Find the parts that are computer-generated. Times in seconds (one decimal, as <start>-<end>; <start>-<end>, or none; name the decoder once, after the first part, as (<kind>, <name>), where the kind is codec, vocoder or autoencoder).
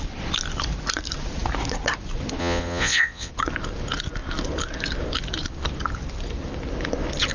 2.4-3.3 (vocoder, Vocos)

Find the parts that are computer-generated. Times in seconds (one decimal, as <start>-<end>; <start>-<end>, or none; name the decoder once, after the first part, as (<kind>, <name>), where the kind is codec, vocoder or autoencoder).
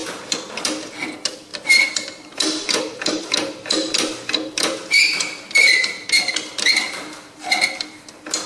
1.5-6.2 (vocoder, BigVGAN v2)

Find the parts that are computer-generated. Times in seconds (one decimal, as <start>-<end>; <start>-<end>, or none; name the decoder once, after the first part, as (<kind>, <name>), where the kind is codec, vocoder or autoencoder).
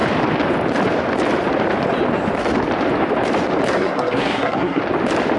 3.7-4.8 (codec, SNAC)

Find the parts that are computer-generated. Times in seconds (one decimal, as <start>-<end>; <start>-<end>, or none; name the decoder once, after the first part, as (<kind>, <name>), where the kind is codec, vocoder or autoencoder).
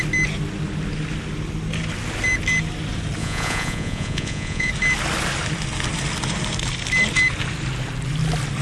3.2-4.7 (vocoder, Vocos)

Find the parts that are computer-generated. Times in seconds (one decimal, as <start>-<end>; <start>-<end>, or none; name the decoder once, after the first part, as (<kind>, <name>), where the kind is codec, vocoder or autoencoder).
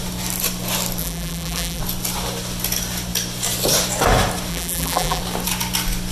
1.0-1.8 (vocoder, BigVGAN v2); 4.5-5.2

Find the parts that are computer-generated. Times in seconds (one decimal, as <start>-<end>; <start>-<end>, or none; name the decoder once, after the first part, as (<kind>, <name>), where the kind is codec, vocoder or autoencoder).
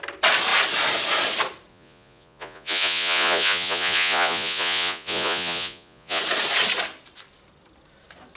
1.7-6.2 (vocoder, Vocos)